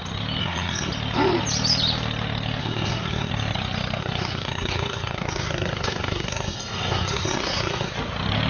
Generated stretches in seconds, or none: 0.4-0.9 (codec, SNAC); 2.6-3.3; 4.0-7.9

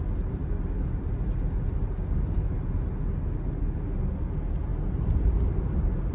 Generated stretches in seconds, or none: none

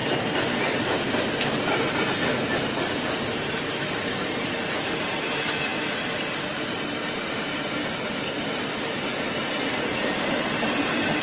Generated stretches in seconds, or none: none